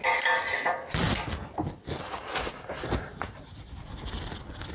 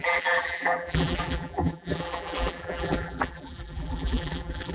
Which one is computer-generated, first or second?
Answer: second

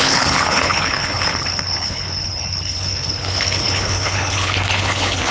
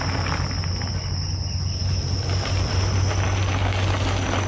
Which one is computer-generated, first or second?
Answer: first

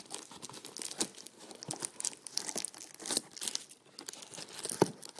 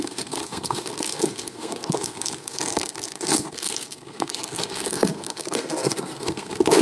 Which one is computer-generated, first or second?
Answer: second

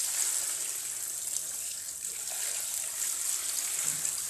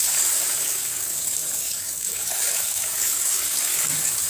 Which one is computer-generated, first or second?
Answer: second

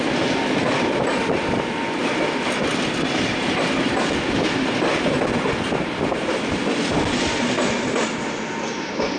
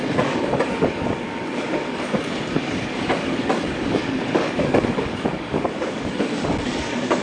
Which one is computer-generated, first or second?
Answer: second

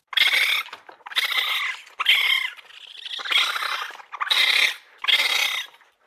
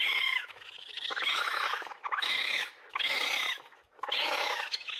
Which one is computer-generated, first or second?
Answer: second